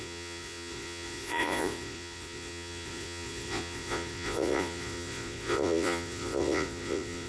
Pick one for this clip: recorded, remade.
remade